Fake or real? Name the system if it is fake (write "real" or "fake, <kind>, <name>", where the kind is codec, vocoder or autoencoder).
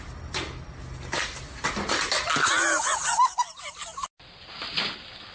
real